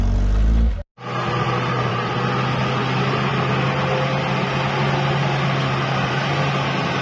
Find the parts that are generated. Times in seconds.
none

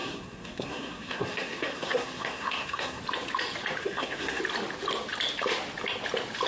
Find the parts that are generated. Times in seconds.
0.0-3.0 (codec, SNAC); 3.8-4.4

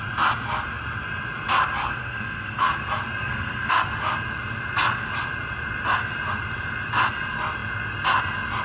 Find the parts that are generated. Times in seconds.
1.8-2.7 (codec, SNAC); 3.2-3.7

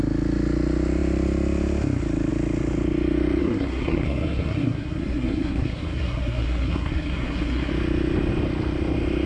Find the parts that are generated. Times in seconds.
3.4-7.7 (codec, SNAC)

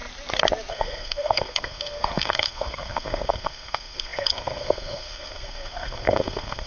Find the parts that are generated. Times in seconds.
0.7-6.7 (codec, SNAC)

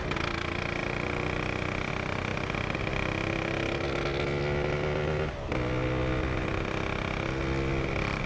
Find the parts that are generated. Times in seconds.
none

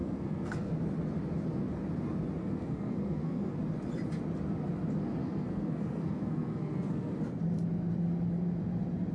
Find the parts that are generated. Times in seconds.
0.0-0.7 (codec, SNAC); 2.4-3.6; 5.2-7.1